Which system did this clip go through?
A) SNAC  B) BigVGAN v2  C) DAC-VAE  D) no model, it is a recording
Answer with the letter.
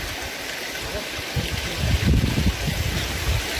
D